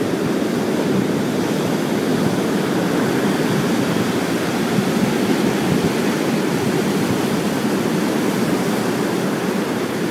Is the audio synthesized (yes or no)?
no